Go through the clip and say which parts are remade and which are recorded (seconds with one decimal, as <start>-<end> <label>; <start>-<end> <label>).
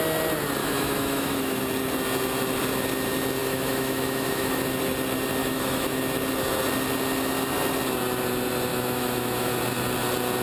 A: 0.0-0.6 recorded; 0.6-1.6 remade; 1.6-3.4 recorded; 3.4-4.6 remade; 4.6-5.4 recorded; 5.4-6.0 remade; 6.0-8.7 recorded; 8.7-9.5 remade; 9.5-10.4 recorded